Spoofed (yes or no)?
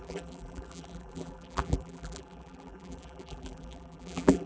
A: yes